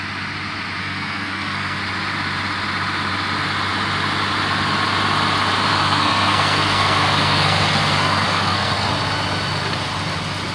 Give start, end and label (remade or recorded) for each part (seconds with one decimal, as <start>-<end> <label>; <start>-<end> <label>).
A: 0.0-0.8 recorded; 0.8-1.8 remade; 1.8-5.7 recorded; 5.7-8.9 remade; 8.9-10.5 recorded